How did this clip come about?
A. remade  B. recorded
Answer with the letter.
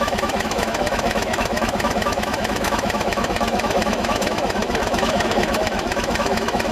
A